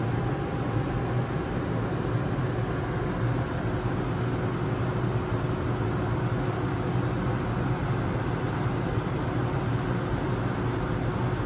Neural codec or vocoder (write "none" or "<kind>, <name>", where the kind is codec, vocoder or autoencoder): none